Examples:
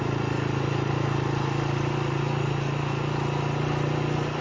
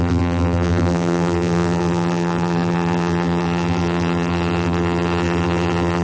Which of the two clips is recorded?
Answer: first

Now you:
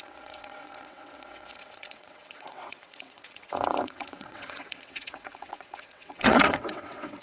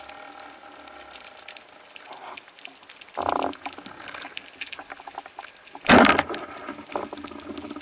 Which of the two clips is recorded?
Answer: second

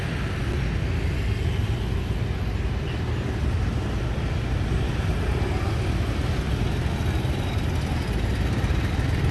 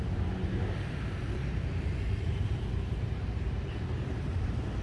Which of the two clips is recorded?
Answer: first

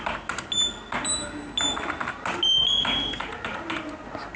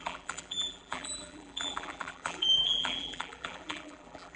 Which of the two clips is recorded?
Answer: first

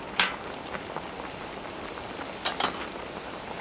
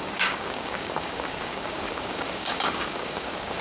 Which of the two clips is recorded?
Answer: first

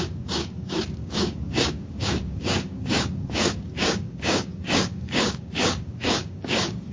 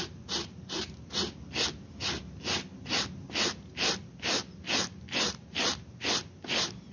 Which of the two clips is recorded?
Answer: second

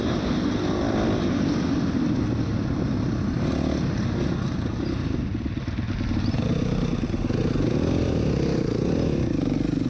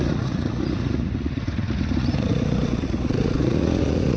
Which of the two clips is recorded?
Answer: first